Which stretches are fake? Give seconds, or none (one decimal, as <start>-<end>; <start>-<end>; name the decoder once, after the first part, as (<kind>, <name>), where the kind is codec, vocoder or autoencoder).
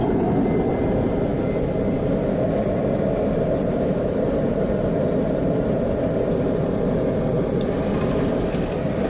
none